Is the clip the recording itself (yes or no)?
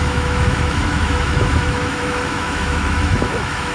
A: no